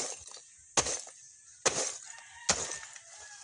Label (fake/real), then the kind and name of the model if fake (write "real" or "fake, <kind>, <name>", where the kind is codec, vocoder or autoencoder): real